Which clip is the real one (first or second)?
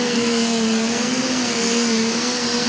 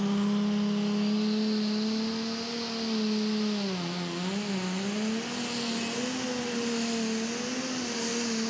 second